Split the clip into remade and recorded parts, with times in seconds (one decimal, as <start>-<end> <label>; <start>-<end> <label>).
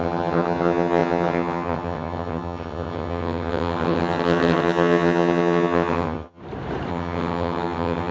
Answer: 0.0-6.4 remade; 6.4-6.9 recorded; 6.9-8.1 remade